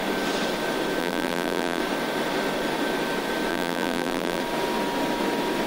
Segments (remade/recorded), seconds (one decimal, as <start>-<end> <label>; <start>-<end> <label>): 0.0-1.0 recorded; 1.0-1.8 remade; 1.8-3.5 recorded; 3.5-4.4 remade; 4.4-5.7 recorded